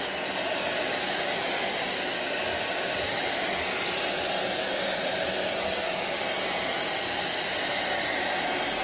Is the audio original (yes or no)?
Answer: yes